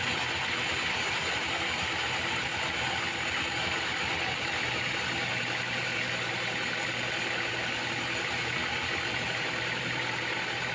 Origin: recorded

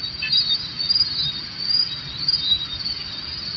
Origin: recorded